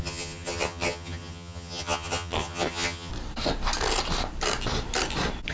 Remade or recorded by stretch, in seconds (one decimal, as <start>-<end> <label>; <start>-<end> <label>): 0.0-3.1 remade; 3.1-5.5 recorded